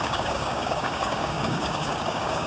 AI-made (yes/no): yes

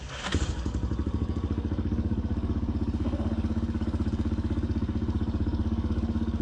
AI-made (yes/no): yes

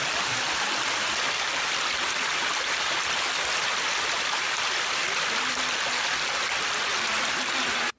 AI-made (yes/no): no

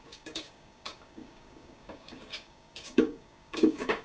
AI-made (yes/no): yes